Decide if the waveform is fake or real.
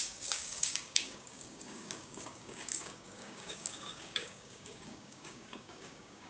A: fake